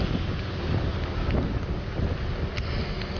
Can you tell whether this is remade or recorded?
recorded